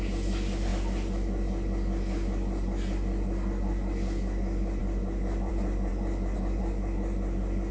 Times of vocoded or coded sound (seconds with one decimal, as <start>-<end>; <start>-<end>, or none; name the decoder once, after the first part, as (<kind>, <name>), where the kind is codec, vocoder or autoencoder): none